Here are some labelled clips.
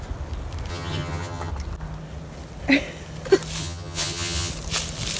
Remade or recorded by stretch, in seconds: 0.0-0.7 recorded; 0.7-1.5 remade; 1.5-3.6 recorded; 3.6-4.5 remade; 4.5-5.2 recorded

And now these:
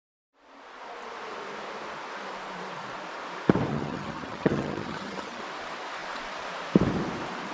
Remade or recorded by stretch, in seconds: 0.0-3.7 recorded; 3.7-5.4 remade; 5.4-7.5 recorded

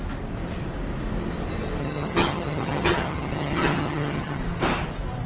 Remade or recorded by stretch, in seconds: 0.0-1.8 recorded; 1.8-4.4 remade; 4.4-5.3 recorded

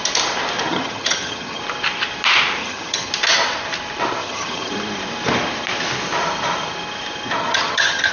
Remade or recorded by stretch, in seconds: 0.0-0.7 recorded; 0.7-1.6 remade; 1.6-2.6 recorded; 2.6-3.1 remade; 3.1-4.2 recorded; 4.2-4.7 remade; 4.7-7.4 recorded; 7.4-8.1 remade

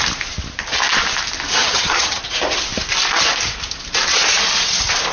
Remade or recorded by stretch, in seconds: 0.0-1.6 recorded; 1.6-2.2 remade; 2.2-5.1 recorded

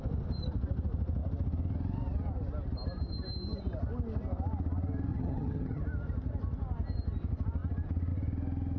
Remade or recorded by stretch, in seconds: 0.0-5.1 recorded; 5.1-5.8 remade; 5.8-8.8 recorded